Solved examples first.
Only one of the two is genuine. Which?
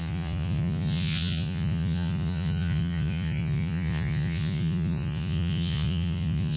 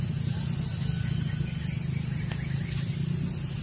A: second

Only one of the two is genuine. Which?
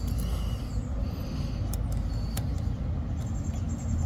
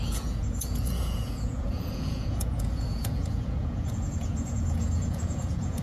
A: first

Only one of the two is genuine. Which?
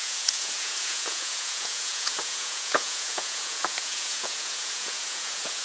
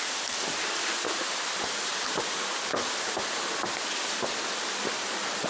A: second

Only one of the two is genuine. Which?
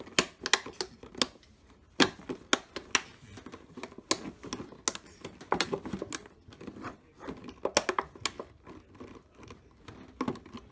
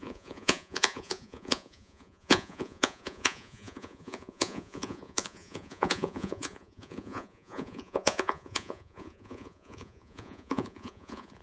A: first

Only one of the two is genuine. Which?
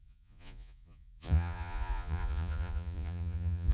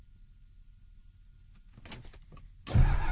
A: second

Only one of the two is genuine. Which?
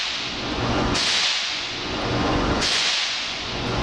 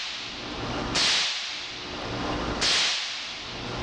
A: second